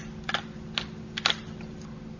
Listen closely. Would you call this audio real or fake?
real